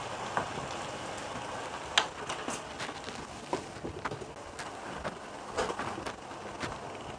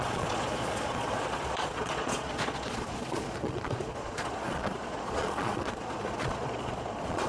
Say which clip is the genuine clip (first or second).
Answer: first